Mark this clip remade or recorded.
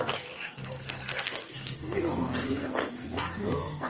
remade